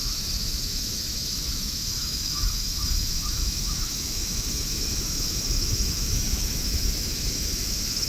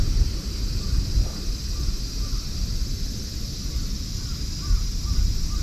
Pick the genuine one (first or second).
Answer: second